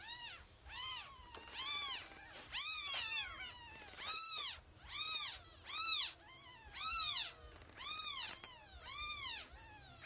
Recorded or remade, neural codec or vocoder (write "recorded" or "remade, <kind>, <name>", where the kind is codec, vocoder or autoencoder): recorded